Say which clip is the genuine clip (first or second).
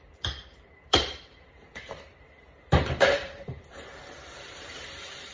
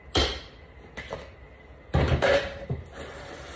second